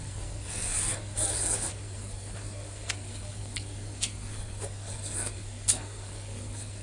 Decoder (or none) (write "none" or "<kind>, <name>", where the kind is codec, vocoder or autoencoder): codec, SNAC